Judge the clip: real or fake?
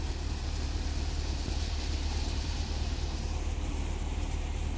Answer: fake